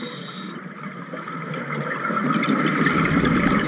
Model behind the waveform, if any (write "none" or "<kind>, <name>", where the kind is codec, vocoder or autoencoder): none